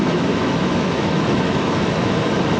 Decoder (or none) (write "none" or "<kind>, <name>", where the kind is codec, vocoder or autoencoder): autoencoder, DAC-VAE